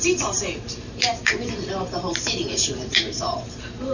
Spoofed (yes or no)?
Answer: yes